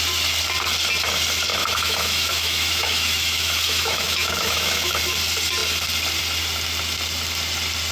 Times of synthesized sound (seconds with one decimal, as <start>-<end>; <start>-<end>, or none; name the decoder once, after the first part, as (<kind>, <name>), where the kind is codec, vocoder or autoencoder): 1.5-5.0 (autoencoder, DAC-VAE)